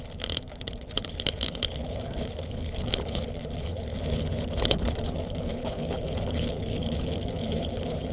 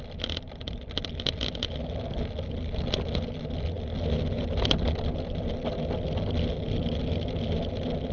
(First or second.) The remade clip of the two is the first